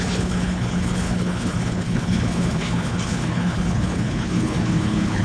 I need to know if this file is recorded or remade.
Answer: remade